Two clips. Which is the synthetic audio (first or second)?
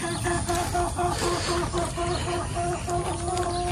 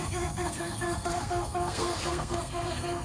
second